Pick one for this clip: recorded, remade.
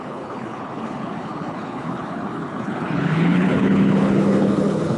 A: remade